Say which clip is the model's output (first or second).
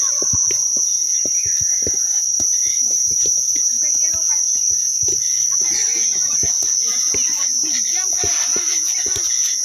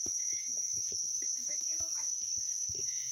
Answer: second